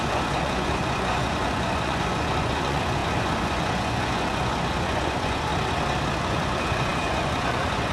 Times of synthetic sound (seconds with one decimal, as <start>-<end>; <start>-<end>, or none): 0.0-5.5; 6.2-7.9

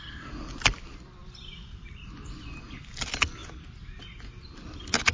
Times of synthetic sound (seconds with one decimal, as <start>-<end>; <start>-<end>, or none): none

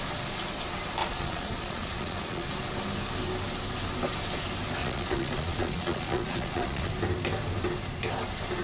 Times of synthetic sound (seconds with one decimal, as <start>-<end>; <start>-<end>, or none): 1.0-2.5; 4.8-6.9

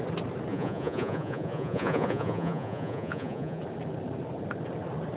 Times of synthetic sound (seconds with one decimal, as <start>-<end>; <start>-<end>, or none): 0.5-3.6